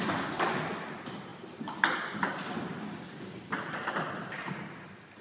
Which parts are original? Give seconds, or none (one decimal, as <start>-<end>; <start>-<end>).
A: 0.0-5.2